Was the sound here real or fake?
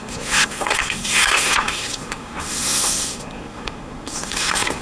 fake